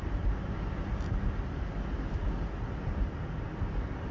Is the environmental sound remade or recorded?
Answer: recorded